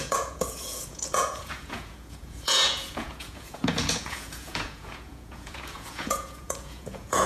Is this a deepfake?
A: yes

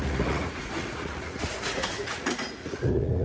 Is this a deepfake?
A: yes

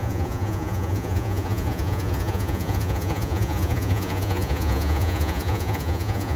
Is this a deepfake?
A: yes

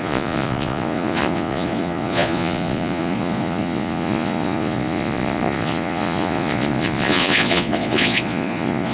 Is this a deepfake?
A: yes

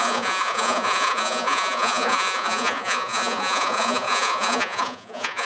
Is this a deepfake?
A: yes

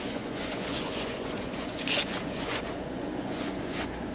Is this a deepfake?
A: yes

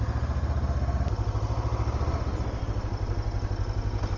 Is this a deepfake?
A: no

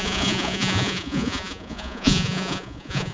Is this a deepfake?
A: yes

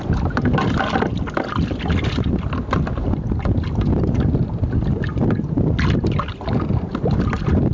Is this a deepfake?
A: no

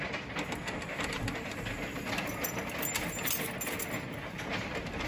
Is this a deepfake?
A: no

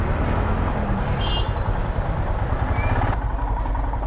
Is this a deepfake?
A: no